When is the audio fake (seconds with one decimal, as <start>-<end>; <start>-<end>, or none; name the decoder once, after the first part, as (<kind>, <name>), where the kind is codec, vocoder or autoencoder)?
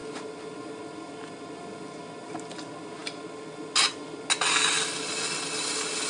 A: none